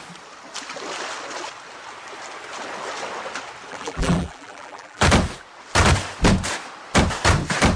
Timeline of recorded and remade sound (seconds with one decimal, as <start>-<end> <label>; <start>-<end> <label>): 0.0-3.7 recorded; 3.7-5.0 remade; 5.0-7.8 recorded